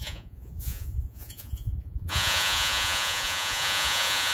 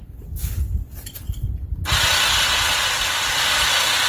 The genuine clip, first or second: second